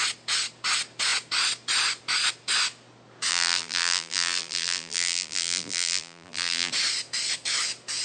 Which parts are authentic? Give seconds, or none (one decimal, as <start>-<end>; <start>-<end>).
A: 0.0-3.3; 6.7-8.0